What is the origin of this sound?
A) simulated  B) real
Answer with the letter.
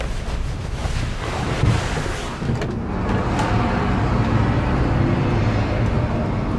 B